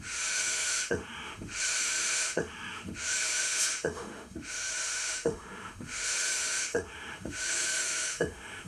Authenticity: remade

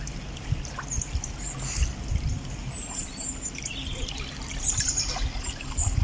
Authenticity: recorded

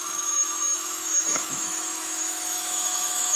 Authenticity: remade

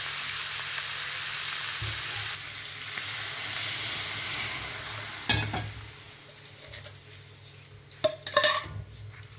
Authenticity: recorded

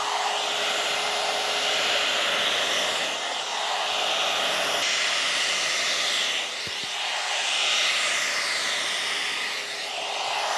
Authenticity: recorded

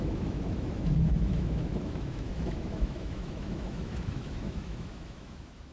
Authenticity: remade